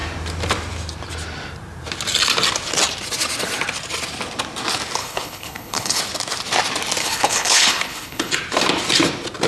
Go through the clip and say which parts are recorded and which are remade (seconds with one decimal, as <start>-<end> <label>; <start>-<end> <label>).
0.0-5.0 recorded; 5.0-6.0 remade; 6.0-7.0 recorded; 7.0-8.3 remade; 8.3-9.5 recorded